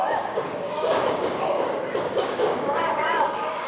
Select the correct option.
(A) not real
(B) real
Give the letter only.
A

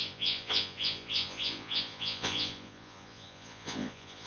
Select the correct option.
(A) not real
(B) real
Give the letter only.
A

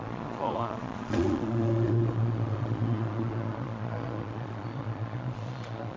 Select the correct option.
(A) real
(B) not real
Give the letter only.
B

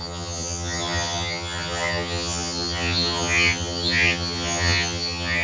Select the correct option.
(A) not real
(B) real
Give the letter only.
A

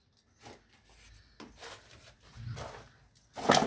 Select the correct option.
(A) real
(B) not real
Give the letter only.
A